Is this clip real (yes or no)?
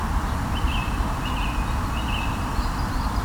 yes